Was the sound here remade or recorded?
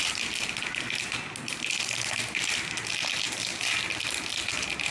recorded